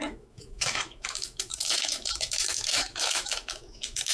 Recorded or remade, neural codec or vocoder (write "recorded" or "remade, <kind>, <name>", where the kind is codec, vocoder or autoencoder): remade, autoencoder, DAC-VAE